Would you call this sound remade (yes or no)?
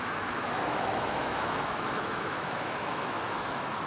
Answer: yes